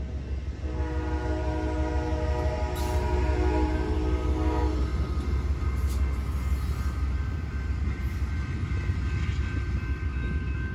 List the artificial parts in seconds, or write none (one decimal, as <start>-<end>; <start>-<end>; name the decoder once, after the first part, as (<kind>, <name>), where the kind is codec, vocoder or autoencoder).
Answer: none